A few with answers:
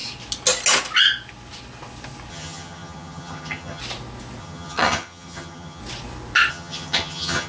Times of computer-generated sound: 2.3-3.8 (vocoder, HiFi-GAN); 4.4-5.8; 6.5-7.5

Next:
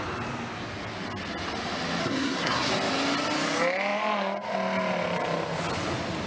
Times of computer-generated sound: 2.0-2.7 (codec, SNAC)